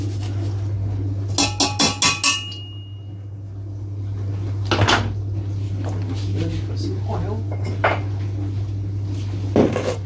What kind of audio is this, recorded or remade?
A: recorded